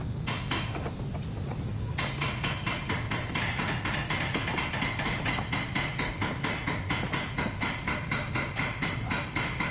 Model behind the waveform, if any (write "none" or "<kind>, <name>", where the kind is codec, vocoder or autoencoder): none